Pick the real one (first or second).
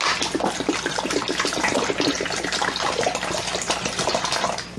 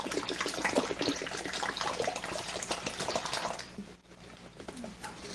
first